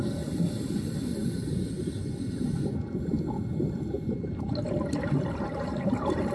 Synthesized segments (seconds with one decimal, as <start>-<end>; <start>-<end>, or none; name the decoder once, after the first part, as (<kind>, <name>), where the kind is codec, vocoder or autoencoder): none